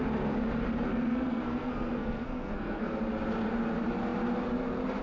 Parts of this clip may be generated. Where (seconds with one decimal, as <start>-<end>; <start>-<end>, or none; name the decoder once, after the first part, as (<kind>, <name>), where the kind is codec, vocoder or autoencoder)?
0.9-3.0 (codec, SNAC)